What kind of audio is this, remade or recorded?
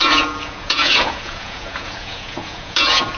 remade